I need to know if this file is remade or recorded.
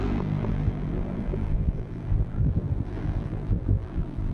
remade